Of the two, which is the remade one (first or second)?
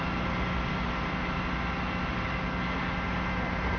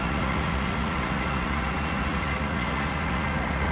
second